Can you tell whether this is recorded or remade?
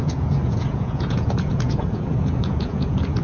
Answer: remade